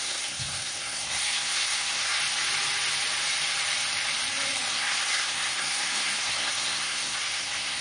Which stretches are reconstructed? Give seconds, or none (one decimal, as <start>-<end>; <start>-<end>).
0.0-2.2; 4.7-7.8